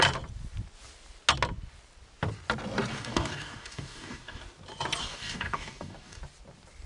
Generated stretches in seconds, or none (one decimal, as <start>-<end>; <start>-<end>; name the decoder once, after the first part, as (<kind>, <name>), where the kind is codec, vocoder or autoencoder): 2.9-4.4 (codec, DAC); 5.0-6.2